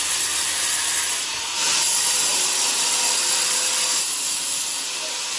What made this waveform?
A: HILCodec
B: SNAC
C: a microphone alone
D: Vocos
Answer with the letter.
C